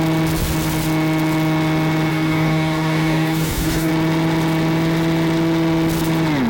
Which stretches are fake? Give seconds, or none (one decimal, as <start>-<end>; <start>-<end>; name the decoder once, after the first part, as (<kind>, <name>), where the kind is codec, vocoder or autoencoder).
2.1-3.9 (codec, DAC)